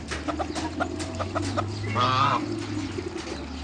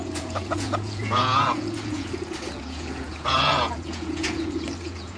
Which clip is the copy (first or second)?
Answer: second